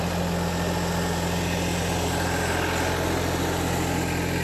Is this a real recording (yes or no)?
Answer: yes